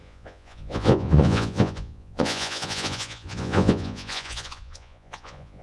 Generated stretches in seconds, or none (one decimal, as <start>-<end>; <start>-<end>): 0.0-5.6

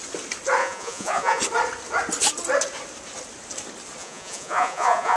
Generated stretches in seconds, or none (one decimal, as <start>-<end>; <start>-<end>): 0.6-1.4; 4.0-5.2

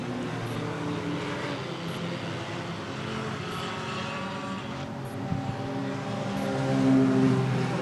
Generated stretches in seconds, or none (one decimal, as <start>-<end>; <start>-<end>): none

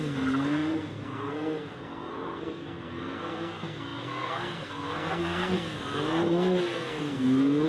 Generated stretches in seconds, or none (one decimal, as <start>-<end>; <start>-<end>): 0.0-7.7